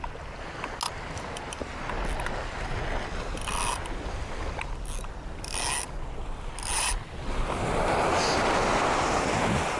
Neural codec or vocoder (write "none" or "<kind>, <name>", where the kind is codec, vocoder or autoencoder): none